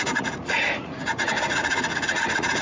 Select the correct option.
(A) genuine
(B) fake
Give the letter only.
B